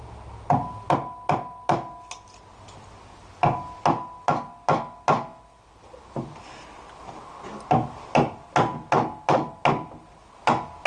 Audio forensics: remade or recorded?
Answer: recorded